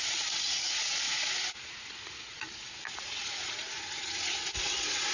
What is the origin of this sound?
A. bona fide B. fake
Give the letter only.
B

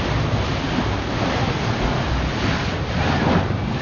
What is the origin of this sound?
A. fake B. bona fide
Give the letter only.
B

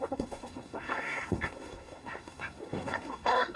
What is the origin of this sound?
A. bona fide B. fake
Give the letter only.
B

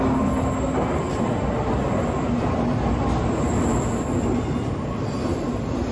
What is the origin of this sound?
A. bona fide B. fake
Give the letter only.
A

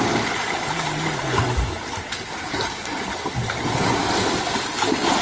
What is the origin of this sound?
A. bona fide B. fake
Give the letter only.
A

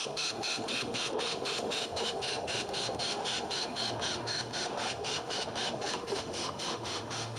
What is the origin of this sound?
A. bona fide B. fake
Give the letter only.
B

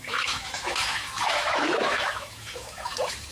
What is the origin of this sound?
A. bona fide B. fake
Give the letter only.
B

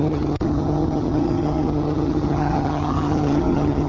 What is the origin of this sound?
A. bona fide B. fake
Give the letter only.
B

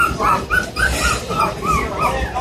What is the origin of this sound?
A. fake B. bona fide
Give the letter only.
A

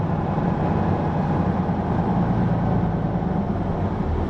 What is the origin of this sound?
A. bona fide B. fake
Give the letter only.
A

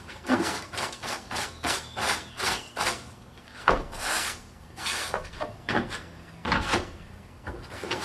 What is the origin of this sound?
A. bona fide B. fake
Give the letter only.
B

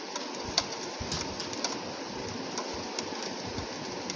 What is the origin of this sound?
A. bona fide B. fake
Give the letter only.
A